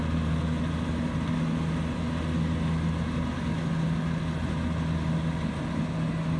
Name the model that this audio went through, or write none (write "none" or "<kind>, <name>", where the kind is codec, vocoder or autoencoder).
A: none